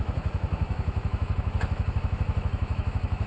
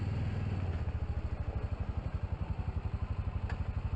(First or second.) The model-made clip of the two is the first